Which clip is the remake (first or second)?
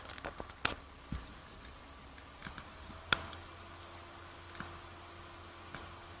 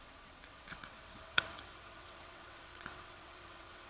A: second